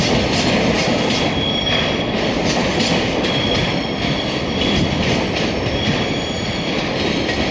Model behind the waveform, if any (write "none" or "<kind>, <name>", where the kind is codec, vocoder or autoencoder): none